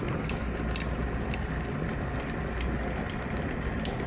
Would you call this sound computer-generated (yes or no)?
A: no